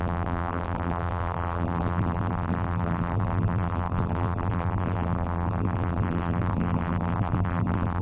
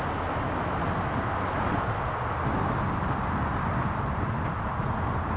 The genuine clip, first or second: second